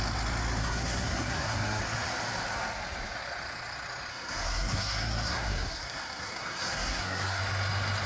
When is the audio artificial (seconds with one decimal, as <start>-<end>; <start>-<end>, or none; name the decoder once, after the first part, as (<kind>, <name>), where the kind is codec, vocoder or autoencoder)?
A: 0.6-1.8 (codec, SNAC); 4.1-7.4